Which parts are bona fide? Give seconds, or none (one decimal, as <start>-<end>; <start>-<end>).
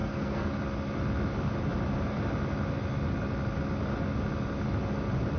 0.6-5.4